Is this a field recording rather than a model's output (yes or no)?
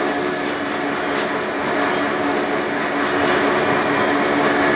yes